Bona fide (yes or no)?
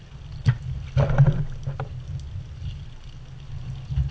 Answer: yes